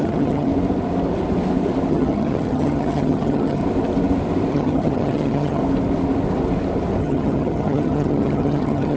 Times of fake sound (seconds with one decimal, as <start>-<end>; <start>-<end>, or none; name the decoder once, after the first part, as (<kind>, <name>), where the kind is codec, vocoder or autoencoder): 0.0-0.5 (vocoder, HiFi-GAN); 1.9-3.6; 4.5-5.6; 7.0-9.0